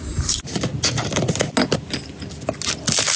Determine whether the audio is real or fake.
real